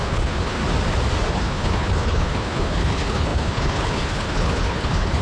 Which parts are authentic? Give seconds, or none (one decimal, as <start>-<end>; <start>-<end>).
0.6-1.3